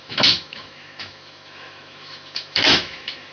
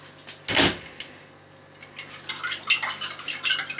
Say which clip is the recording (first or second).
second